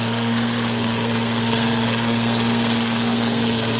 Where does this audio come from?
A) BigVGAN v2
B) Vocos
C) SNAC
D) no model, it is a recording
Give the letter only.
C